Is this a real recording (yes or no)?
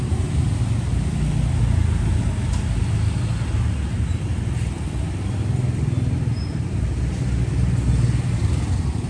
yes